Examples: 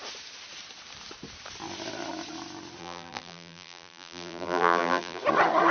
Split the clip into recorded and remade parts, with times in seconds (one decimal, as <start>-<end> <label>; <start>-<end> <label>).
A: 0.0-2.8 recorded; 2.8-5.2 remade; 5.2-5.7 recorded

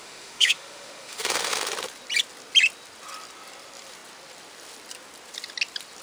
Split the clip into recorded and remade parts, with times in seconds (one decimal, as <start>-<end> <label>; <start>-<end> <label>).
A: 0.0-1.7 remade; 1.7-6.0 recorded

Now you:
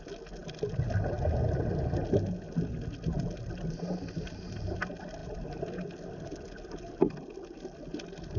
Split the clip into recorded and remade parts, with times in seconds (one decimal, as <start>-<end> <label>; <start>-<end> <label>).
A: 0.0-8.4 recorded